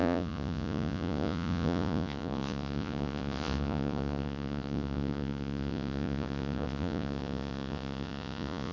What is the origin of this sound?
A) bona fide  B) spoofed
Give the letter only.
B